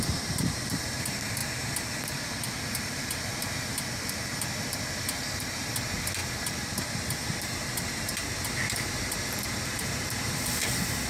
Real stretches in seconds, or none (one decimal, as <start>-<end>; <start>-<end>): none